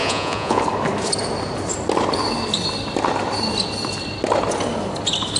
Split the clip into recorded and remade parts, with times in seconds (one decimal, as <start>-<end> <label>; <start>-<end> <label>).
0.0-0.6 remade; 0.6-5.4 recorded